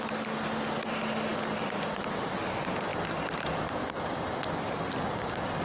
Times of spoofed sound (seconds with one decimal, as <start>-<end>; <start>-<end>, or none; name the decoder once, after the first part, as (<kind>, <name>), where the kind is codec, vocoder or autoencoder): 1.3-2.3 (vocoder, BigVGAN v2)